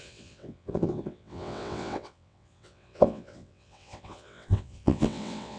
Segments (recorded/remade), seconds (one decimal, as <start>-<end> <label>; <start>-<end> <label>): 0.0-5.6 remade